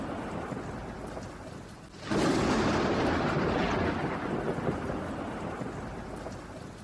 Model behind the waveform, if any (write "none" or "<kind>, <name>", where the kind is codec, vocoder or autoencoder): none